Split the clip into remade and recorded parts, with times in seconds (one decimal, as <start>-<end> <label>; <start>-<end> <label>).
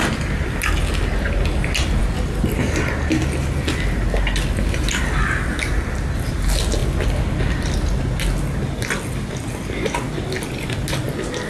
0.0-11.5 recorded